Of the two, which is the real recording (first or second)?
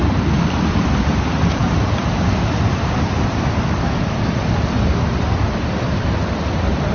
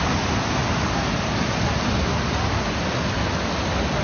second